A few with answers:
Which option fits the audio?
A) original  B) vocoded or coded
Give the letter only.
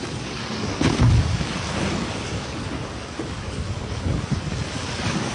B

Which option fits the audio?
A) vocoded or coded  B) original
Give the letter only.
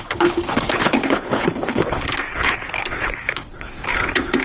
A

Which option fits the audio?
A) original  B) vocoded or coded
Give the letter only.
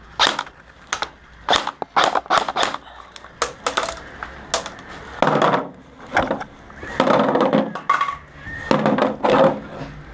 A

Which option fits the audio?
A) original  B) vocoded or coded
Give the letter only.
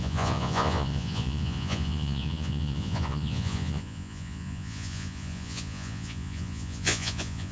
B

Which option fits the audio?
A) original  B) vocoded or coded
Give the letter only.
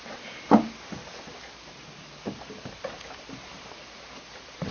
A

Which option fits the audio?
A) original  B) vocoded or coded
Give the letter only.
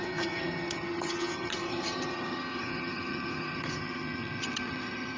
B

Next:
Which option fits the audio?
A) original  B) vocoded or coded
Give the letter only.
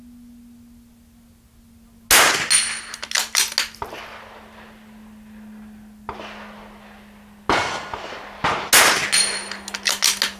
A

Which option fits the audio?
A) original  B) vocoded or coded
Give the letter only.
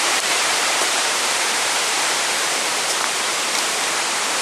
B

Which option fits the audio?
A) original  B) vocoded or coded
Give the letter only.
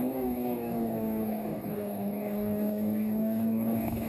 B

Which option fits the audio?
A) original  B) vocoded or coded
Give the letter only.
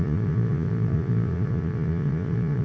B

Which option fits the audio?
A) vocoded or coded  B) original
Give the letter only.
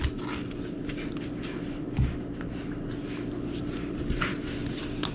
B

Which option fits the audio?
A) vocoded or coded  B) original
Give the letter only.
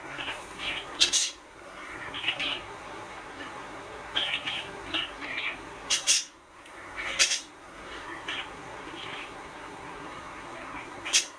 A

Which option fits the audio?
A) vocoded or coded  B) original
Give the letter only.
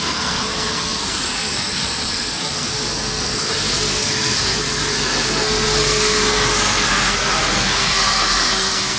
A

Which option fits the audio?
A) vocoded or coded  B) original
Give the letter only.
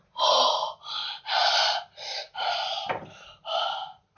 B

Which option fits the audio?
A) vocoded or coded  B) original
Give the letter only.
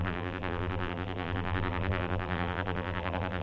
A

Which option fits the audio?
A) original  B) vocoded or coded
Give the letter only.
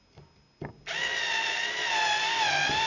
A